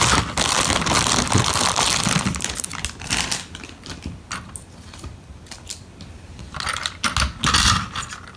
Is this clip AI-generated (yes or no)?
no